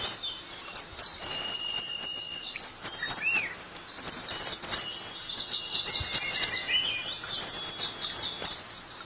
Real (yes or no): yes